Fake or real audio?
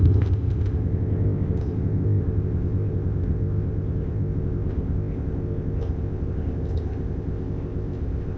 fake